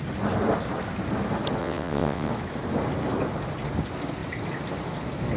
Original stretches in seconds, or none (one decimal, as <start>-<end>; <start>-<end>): 0.0-1.6; 2.3-5.4